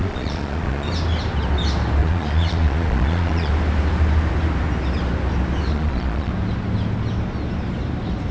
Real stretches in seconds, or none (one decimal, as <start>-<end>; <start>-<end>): 0.9-2.0; 3.5-5.7; 6.3-8.3